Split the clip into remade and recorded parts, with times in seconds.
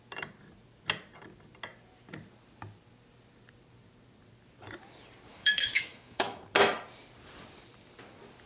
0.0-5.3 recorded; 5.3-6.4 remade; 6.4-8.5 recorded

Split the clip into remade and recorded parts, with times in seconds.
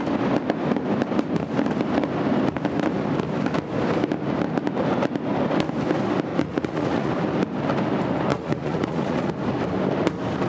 0.0-6.3 recorded; 6.3-7.1 remade; 7.1-8.3 recorded; 8.3-9.3 remade; 9.3-10.5 recorded